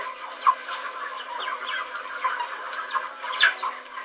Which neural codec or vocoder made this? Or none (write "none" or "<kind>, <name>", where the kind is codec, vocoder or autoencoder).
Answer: none